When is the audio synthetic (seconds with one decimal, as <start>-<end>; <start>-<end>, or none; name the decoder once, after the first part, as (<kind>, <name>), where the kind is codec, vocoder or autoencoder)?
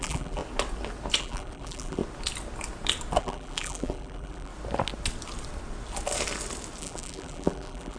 0.0-0.4 (vocoder, BigVGAN v2); 1.2-2.0; 3.2-4.5; 6.8-8.0